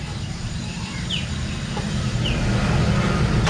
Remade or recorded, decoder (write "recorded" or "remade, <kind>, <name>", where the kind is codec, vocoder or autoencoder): recorded